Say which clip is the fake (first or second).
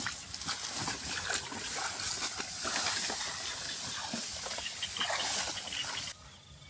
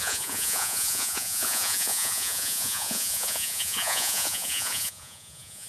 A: second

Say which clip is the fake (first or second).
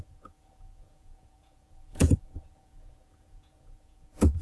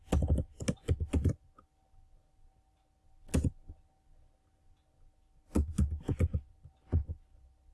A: first